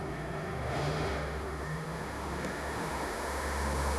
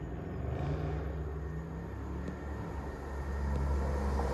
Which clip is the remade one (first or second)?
first